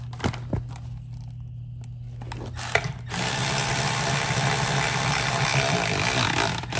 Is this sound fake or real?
real